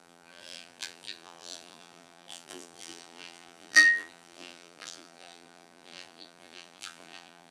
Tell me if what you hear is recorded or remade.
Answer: remade